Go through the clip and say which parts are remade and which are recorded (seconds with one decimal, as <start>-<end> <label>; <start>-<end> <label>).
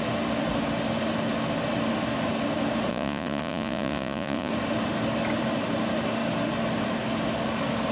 0.0-2.9 recorded; 2.9-4.5 remade; 4.5-7.9 recorded